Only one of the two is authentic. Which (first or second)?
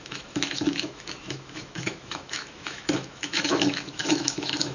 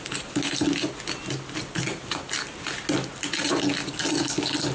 second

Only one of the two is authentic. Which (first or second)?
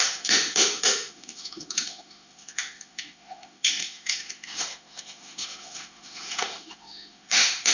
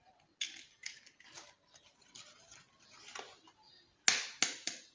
second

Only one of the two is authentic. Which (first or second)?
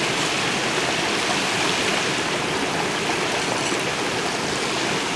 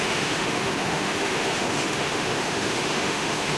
first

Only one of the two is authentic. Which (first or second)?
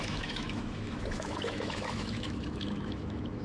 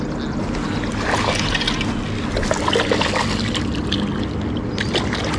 second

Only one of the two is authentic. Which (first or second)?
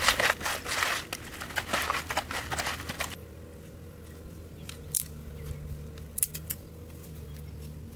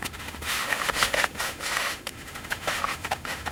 first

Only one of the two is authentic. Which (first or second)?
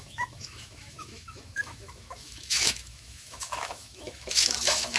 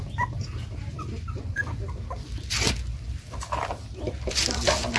second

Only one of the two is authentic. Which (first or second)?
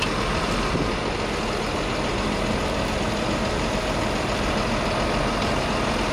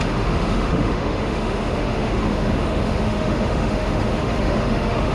first